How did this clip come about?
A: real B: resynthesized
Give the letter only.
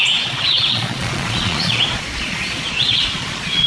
B